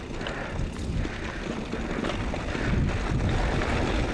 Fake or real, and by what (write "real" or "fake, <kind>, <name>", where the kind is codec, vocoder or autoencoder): real